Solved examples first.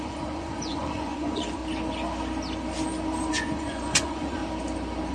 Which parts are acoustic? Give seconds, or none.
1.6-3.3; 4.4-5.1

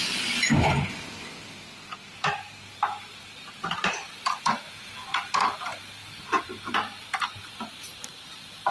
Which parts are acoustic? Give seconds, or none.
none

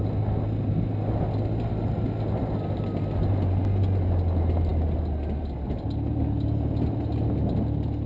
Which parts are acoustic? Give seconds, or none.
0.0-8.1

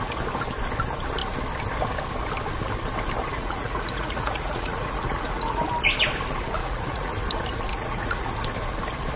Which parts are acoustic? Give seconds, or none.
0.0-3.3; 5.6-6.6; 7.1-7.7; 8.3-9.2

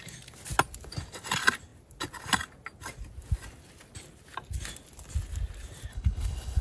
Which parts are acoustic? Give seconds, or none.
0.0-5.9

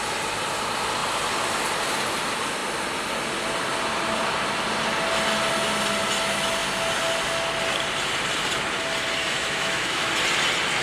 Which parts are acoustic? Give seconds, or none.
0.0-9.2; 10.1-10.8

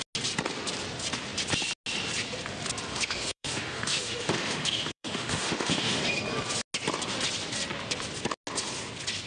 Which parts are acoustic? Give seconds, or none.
0.0-2.9; 6.0-9.3

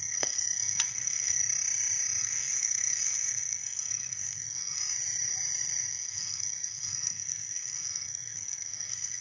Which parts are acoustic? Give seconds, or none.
1.4-2.2; 4.8-5.9